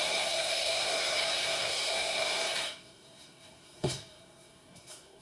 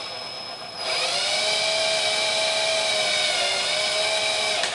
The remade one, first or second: first